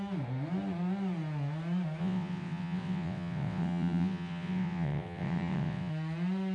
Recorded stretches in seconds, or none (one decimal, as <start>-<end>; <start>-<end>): 0.0-2.0; 5.9-6.5